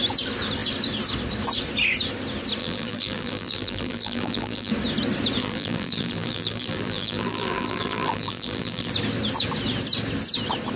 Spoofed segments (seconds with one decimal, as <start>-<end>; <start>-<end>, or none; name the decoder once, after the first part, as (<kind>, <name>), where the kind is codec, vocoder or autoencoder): 2.6-4.7 (vocoder, BigVGAN v2); 5.4-8.9